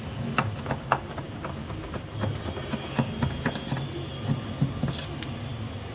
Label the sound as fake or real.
real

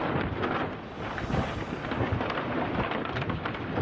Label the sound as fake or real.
real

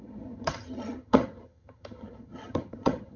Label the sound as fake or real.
fake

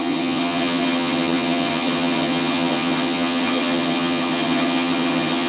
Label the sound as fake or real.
fake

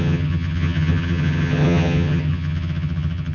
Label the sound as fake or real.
fake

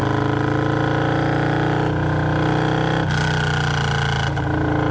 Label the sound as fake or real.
real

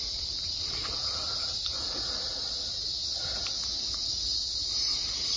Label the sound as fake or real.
real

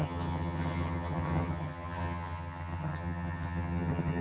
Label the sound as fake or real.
fake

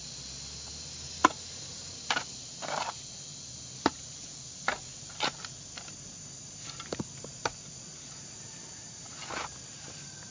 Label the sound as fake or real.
real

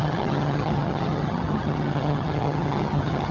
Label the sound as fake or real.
fake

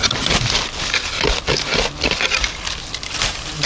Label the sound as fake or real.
real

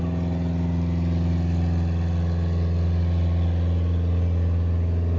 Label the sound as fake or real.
real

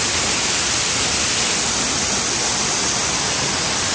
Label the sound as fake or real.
real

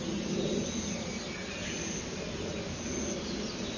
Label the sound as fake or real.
real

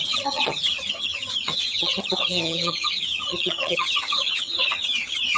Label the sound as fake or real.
fake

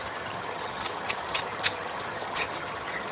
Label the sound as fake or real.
fake